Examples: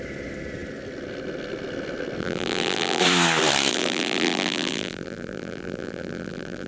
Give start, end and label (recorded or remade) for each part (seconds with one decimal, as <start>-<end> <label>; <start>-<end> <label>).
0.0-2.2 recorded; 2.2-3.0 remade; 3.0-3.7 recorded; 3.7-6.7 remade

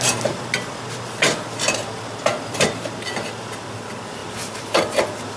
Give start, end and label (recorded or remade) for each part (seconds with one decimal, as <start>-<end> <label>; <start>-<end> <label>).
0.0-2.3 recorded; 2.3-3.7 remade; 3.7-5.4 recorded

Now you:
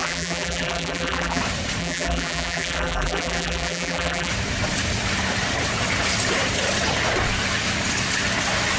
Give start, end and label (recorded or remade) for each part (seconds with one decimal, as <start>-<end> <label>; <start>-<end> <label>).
0.0-1.4 remade; 1.4-1.8 recorded; 1.8-4.3 remade; 4.3-8.8 recorded

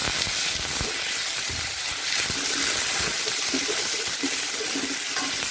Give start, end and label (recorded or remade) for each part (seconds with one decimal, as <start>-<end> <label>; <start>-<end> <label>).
0.0-0.8 remade; 0.8-1.3 recorded; 1.3-4.1 remade; 4.1-5.5 recorded